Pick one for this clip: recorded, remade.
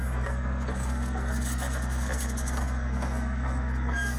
remade